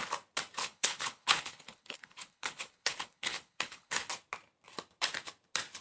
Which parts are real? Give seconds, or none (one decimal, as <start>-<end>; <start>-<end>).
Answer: 0.0-0.6; 4.1-5.8